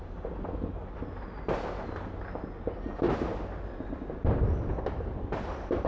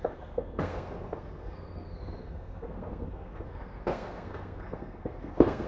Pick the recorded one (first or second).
first